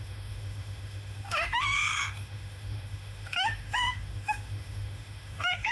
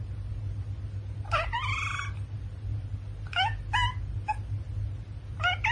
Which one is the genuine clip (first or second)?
second